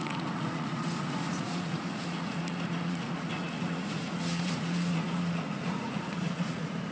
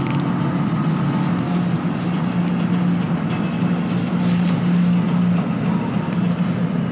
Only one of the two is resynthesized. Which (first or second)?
first